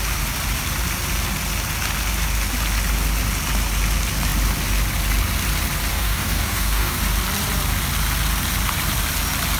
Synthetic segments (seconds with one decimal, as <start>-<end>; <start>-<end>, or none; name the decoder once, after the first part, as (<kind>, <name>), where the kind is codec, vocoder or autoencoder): 5.9-7.0 (codec, DAC)